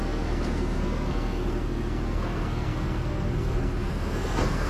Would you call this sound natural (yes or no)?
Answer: no